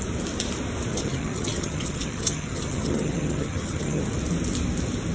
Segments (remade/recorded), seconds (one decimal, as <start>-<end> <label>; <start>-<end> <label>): 0.0-0.9 recorded; 0.9-4.0 remade; 4.0-5.1 recorded